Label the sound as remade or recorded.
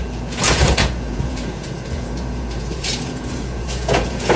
remade